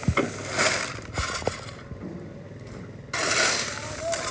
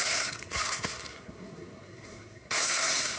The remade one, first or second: second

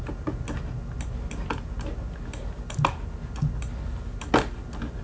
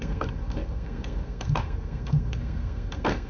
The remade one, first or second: second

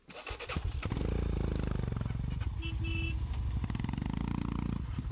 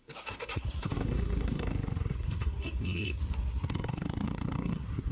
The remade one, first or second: second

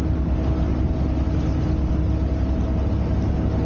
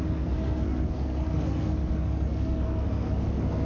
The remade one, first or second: second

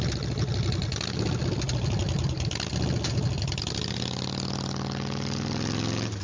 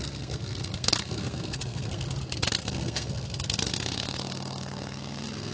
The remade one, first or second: second